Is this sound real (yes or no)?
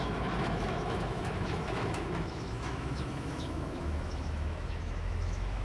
no